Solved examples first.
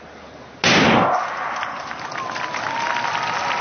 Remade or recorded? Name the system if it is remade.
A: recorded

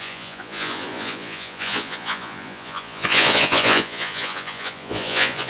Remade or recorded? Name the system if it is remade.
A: remade, vocoder, Vocos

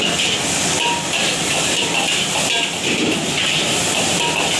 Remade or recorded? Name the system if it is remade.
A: recorded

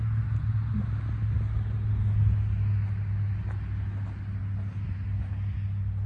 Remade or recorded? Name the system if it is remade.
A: recorded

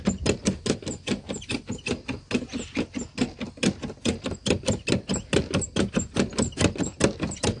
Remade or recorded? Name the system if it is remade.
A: recorded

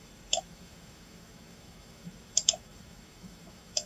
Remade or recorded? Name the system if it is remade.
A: remade, autoencoder, DAC-VAE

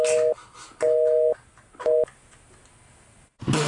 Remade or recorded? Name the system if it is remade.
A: recorded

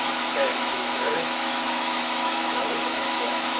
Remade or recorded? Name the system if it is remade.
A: remade, autoencoder, DAC-VAE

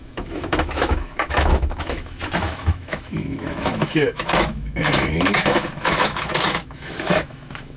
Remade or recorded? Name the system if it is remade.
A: remade, autoencoder, DAC-VAE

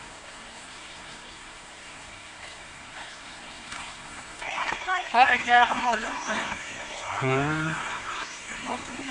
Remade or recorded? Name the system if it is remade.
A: remade, codec, SNAC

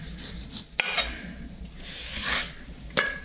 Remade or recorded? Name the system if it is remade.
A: recorded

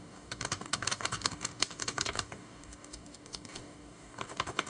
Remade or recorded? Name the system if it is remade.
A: remade, codec, DAC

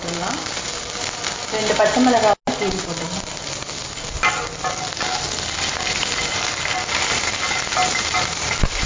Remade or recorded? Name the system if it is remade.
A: recorded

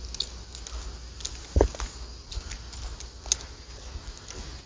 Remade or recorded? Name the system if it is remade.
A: recorded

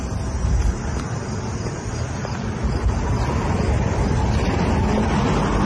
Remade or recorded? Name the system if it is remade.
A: recorded